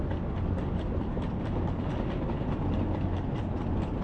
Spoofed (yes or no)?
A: no